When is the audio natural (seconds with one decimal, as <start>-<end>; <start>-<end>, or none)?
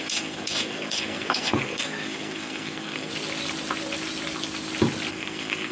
3.1-5.1